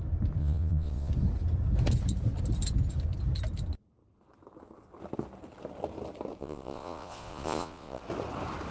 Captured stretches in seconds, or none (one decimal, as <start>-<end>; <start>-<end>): 0.0-0.4; 1.1-6.4; 8.0-8.7